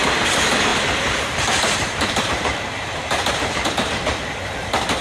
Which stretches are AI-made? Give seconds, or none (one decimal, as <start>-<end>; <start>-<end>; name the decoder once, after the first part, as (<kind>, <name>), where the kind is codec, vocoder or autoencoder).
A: 0.7-3.7 (vocoder, BigVGAN v2)